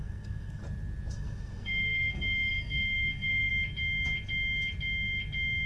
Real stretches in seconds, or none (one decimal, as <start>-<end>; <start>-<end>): 0.6-1.1; 3.5-5.7